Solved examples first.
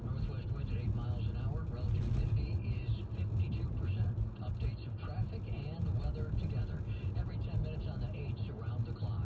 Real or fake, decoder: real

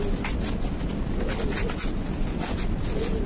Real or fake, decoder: real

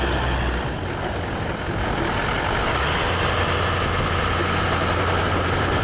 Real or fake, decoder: real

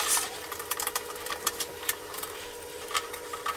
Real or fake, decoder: fake, vocoder, BigVGAN v2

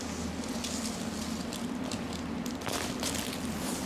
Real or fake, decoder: real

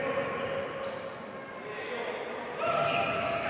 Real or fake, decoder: real